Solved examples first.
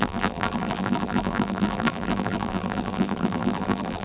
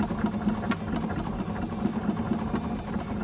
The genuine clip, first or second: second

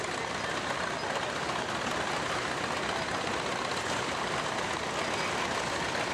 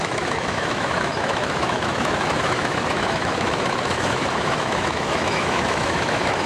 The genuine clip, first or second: first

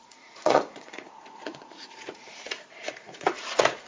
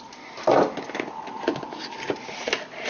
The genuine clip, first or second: second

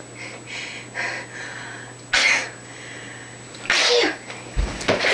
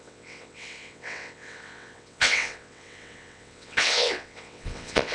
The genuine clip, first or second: first